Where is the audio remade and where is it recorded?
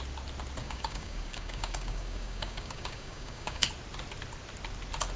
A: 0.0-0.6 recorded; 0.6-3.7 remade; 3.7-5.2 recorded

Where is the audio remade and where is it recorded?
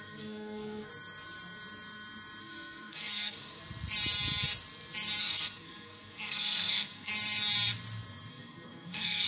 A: 0.0-0.9 remade; 0.9-2.4 recorded; 2.4-3.6 remade; 3.6-5.2 recorded; 5.2-7.1 remade; 7.1-8.3 recorded; 8.3-9.3 remade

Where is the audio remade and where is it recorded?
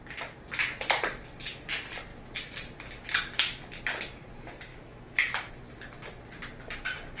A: 0.0-4.7 recorded; 4.7-5.5 remade; 5.5-7.2 recorded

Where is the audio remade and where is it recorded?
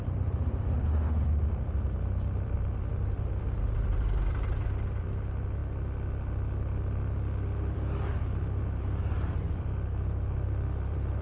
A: 0.0-11.2 remade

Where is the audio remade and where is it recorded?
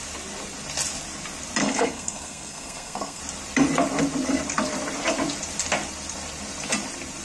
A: 0.0-1.6 recorded; 1.6-3.2 remade; 3.2-7.2 recorded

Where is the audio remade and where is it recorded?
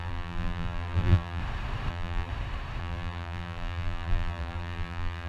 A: 0.0-1.4 remade; 1.4-1.9 recorded; 1.9-2.3 remade; 2.3-2.8 recorded; 2.8-5.3 remade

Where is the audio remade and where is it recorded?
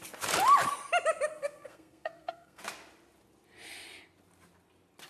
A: 0.0-1.3 recorded; 1.3-2.6 remade; 2.6-5.1 recorded